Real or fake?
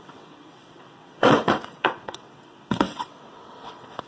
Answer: fake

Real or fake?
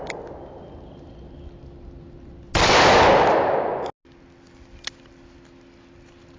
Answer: real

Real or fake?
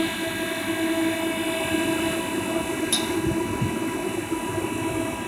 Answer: real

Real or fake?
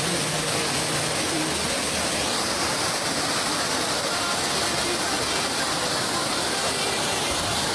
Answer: real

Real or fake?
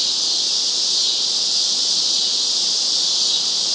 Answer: real